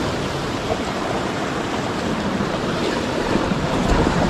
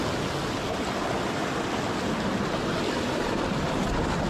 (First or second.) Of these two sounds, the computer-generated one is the first